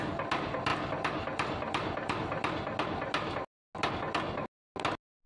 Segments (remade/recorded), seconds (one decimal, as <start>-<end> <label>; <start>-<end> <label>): 0.0-5.3 recorded